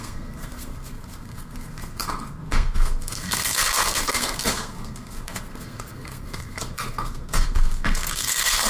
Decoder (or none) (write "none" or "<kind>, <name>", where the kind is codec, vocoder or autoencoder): codec, SNAC